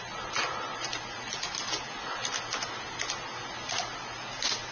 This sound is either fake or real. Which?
real